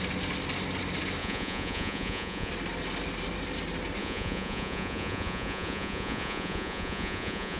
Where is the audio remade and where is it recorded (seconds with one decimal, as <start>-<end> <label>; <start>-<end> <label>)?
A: 0.0-1.2 recorded; 1.2-2.5 remade; 2.5-4.0 recorded; 4.0-7.6 remade

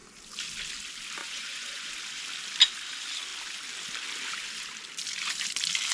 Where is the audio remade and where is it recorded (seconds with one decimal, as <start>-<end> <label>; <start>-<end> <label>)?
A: 0.0-1.2 recorded; 1.2-1.9 remade; 1.9-5.9 recorded

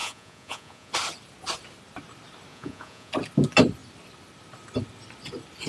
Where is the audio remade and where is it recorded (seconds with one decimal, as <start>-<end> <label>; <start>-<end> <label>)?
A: 0.0-0.9 remade; 0.9-2.5 recorded; 2.5-3.1 remade; 3.1-5.7 recorded

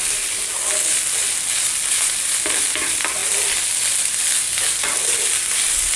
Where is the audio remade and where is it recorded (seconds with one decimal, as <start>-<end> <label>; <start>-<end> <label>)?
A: 0.0-6.0 recorded

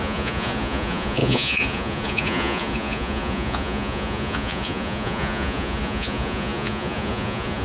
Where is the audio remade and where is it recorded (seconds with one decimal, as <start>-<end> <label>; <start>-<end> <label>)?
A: 0.0-7.6 remade

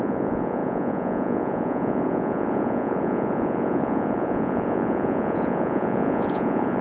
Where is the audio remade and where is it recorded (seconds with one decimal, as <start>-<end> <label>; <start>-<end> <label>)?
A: 0.0-6.8 remade

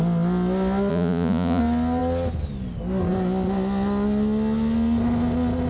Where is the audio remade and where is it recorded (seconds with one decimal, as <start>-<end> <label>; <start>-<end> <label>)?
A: 0.0-0.9 recorded; 0.9-1.6 remade; 1.6-5.7 recorded

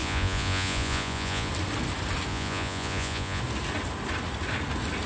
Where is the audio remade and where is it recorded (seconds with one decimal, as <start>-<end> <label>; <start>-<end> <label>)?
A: 0.0-1.5 remade; 1.5-2.3 recorded; 2.3-3.4 remade; 3.4-5.1 recorded